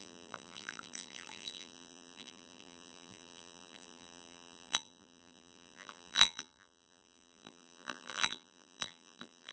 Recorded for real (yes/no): no